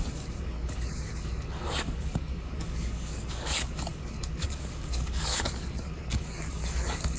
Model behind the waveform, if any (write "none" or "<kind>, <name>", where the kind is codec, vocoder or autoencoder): codec, DAC